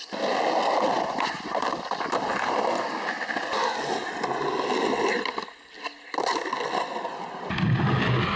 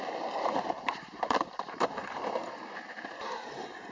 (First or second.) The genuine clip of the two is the first